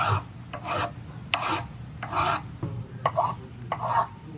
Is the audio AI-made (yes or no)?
no